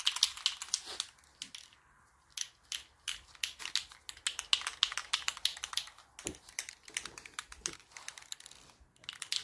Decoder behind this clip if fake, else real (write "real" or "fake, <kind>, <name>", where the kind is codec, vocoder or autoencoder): real